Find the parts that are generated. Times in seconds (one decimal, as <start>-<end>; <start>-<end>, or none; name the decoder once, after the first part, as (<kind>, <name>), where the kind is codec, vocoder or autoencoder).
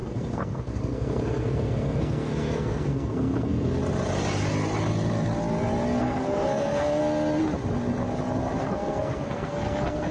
0.0-3.8 (codec, SNAC); 6.0-7.0; 8.6-10.1